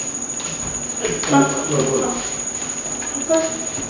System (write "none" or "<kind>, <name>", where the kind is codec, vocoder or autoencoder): none